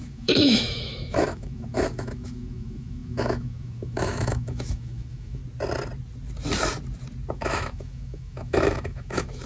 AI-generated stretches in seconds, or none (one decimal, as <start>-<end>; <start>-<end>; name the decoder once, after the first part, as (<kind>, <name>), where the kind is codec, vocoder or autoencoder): 0.0-5.4 (autoencoder, DAC-VAE); 7.3-9.5